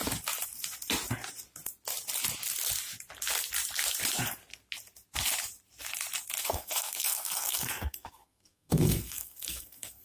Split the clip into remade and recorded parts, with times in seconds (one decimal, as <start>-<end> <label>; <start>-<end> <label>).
0.0-6.4 recorded; 6.4-10.0 remade